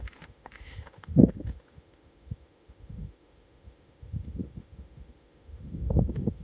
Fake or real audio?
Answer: fake